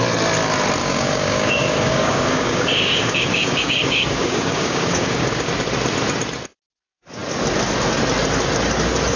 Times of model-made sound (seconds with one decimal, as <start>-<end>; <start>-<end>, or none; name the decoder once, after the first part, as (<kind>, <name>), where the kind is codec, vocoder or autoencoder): 0.8-5.5 (codec, DAC)